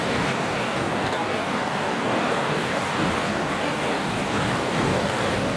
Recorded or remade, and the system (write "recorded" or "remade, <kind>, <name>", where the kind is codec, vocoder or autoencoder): remade, codec, DAC